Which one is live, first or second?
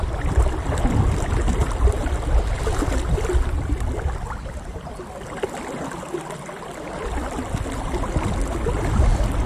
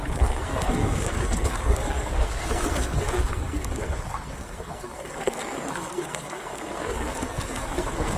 first